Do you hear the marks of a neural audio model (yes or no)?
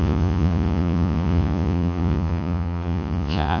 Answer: yes